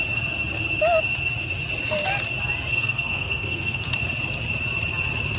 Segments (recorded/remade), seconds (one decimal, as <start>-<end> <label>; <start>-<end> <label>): 0.0-2.7 recorded; 2.7-3.9 remade; 3.9-5.4 recorded